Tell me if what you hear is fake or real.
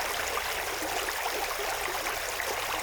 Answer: real